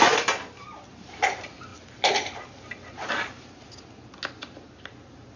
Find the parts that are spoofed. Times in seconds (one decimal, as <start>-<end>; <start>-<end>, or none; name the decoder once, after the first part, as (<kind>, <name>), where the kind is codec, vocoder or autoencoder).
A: none